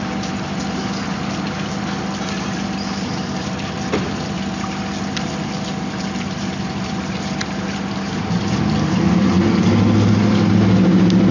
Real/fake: real